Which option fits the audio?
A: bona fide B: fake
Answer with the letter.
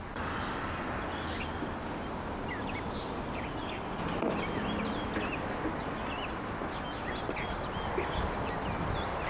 A